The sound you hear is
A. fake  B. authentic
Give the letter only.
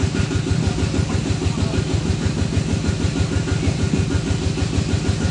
B